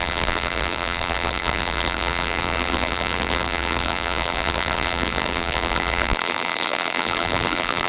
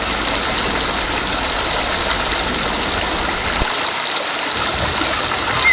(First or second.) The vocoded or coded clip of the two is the first